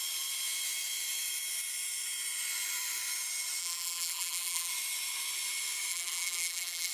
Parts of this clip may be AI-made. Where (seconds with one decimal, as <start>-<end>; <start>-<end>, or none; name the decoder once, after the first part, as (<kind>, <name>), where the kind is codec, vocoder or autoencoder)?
3.6-4.7 (vocoder, BigVGAN v2); 5.9-6.9